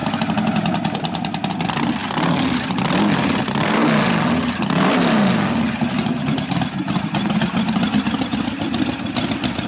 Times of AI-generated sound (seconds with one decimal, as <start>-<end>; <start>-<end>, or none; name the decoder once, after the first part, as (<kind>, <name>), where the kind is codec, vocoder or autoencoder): 1.5-3.8 (vocoder, BigVGAN v2); 7.0-9.7